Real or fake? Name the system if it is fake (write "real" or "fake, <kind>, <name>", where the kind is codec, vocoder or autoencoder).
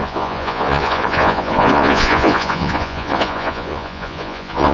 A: fake, vocoder, Vocos